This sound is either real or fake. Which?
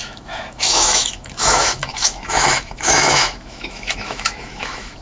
fake